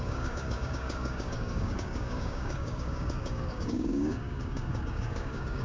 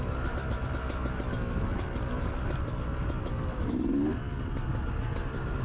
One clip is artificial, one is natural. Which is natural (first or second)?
second